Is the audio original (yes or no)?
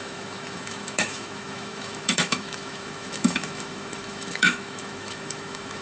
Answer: no